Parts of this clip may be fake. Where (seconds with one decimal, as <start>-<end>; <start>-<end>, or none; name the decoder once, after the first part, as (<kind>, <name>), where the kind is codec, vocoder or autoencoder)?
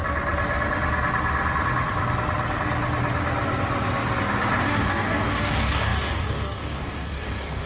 4.6-7.7 (codec, DAC)